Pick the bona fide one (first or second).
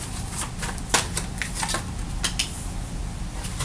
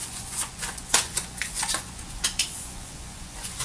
first